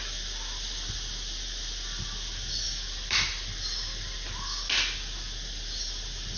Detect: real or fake real